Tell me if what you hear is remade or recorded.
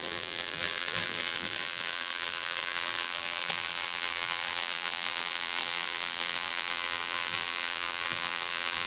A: remade